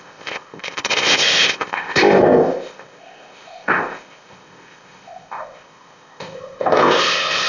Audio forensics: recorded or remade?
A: remade